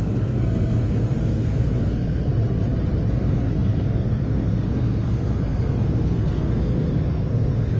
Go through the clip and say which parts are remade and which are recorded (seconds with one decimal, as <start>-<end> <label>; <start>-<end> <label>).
0.0-2.3 remade; 2.3-3.1 recorded; 3.1-7.8 remade